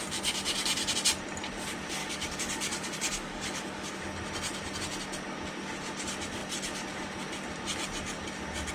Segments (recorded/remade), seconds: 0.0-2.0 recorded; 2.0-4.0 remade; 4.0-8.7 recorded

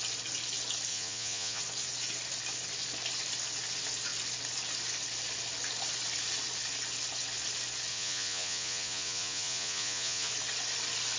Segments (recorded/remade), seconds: 0.0-0.9 recorded; 0.9-1.6 remade; 1.6-7.9 recorded; 7.9-10.3 remade; 10.3-11.2 recorded

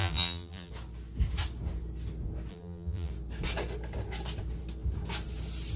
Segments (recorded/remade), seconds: 0.0-0.7 remade; 0.7-2.5 recorded; 2.5-3.1 remade; 3.1-5.8 recorded

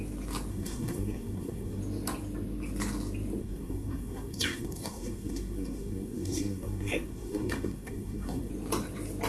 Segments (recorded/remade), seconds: 0.0-0.5 recorded; 0.5-1.8 remade; 1.8-3.4 recorded; 3.4-8.5 remade; 8.5-9.3 recorded